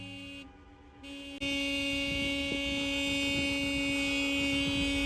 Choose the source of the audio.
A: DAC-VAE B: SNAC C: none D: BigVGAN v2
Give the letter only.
C